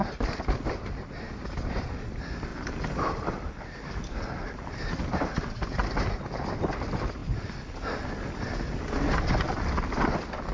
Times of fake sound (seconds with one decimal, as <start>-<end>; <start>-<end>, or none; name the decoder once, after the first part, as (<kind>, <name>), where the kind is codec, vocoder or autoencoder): none